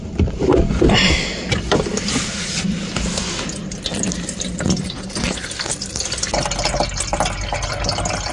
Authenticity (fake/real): real